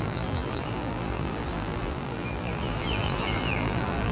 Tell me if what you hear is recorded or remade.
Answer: remade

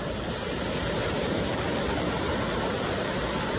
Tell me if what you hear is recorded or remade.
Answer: remade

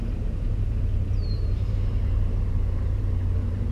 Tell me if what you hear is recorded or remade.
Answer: remade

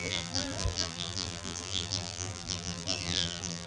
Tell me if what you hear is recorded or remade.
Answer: remade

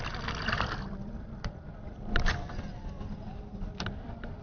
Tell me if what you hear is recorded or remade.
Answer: remade